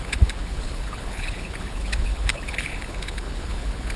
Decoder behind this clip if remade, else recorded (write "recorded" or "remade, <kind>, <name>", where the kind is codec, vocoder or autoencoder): remade, codec, HILCodec